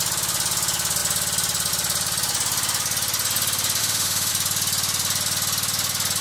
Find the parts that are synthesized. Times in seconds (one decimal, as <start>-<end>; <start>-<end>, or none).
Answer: 3.8-4.3